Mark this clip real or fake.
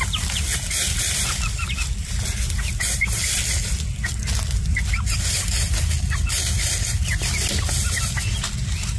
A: real